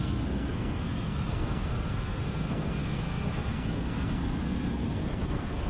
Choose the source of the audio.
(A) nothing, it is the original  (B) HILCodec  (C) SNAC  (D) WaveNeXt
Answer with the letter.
C